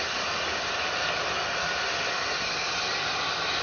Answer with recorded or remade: recorded